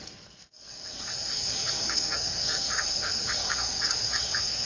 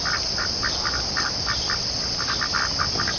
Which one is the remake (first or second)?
first